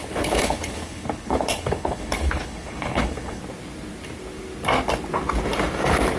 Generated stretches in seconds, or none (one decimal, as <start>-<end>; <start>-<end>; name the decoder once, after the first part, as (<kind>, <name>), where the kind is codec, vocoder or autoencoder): 0.0-3.4 (codec, HILCodec)